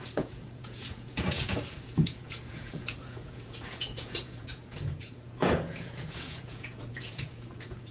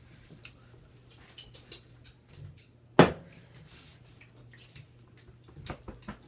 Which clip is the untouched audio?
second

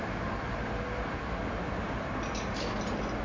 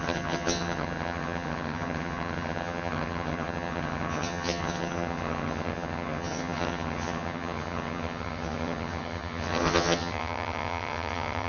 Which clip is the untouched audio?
first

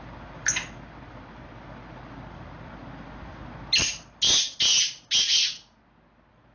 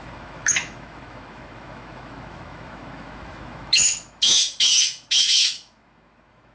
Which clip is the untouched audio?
first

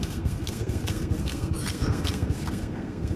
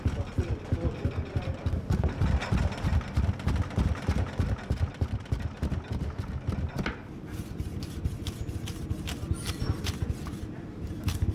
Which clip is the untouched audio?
second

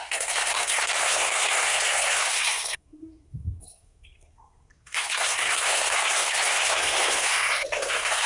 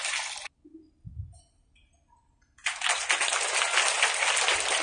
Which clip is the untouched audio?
second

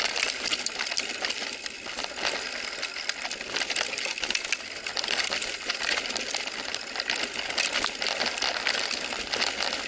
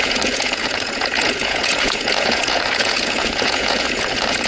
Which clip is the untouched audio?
first